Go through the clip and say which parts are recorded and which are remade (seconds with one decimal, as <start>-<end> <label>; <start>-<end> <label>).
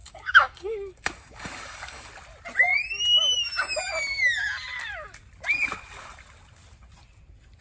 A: 0.0-2.1 remade; 2.1-7.6 recorded